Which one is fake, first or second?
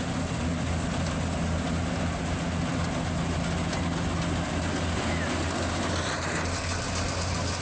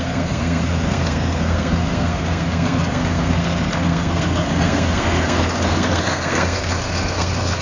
second